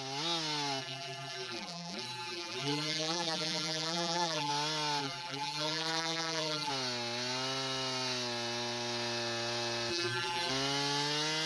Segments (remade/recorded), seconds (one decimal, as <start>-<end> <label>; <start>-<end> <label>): 0.0-0.8 recorded; 0.8-4.5 remade; 4.5-5.0 recorded; 5.0-6.7 remade; 6.7-9.9 recorded; 9.9-10.5 remade; 10.5-11.5 recorded